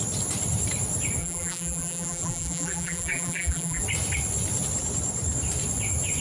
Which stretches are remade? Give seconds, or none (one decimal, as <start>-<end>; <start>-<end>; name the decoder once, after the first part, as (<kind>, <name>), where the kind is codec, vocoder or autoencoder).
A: 1.2-3.8 (vocoder, BigVGAN v2)